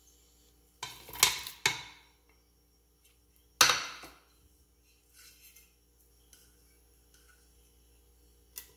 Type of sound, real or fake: real